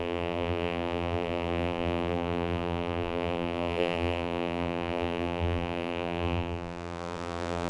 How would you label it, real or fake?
fake